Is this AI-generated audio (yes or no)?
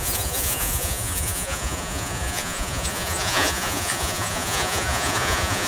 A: yes